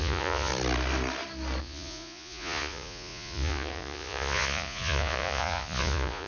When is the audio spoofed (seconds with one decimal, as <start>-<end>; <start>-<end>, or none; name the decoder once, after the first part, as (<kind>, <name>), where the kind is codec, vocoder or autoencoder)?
0.0-0.5 (vocoder, Vocos); 1.6-6.3